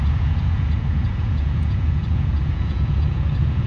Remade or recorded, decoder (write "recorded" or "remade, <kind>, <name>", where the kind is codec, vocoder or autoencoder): remade, vocoder, Vocos